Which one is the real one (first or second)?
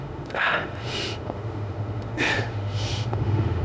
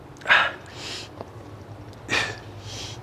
second